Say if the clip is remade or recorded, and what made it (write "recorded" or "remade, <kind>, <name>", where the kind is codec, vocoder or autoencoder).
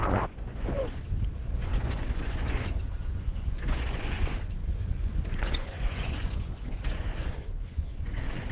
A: remade, vocoder, Vocos